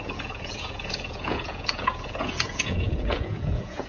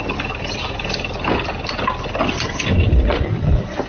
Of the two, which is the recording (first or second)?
second